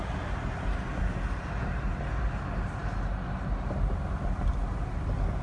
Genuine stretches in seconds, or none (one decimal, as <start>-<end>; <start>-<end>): 0.0-5.4